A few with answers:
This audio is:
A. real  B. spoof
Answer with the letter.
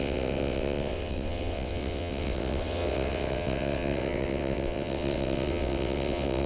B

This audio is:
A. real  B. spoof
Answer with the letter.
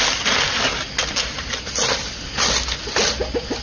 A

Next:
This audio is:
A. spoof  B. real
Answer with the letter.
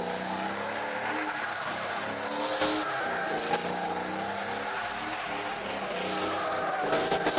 B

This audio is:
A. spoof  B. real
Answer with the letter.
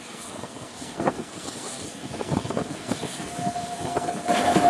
A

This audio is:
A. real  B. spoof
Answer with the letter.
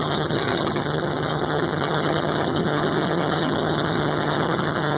B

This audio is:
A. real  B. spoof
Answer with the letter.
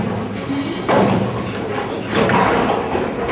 A